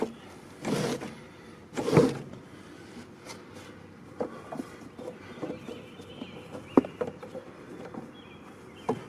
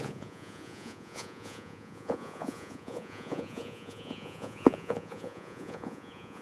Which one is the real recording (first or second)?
first